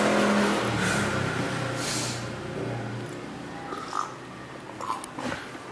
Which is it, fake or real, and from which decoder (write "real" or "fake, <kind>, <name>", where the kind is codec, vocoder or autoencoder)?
real